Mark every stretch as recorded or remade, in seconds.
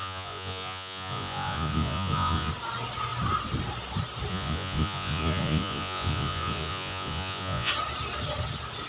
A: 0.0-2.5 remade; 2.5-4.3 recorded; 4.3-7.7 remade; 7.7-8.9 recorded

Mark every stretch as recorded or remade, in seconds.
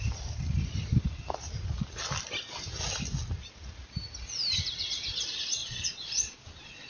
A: 0.0-5.6 recorded; 5.6-6.9 remade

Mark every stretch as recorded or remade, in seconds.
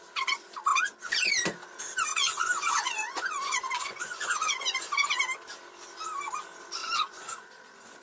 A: 0.0-2.1 recorded; 2.1-5.2 remade; 5.2-6.8 recorded; 6.8-7.5 remade; 7.5-8.0 recorded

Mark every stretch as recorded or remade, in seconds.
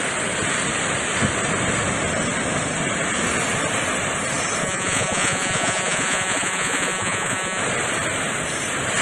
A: 0.0-4.6 recorded; 4.6-7.6 remade; 7.6-9.0 recorded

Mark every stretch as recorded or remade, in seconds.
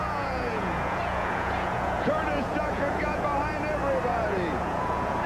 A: 0.0-3.2 remade; 3.2-4.1 recorded; 4.1-5.3 remade